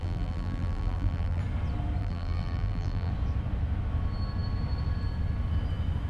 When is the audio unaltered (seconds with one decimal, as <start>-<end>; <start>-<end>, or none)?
1.4-2.0; 3.1-6.1